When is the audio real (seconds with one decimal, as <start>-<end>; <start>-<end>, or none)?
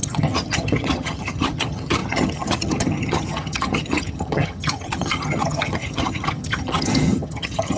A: none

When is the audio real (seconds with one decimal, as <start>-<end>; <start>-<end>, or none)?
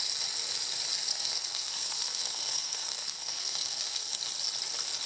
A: 0.0-1.1; 4.2-5.1